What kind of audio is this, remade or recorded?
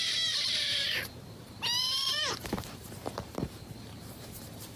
remade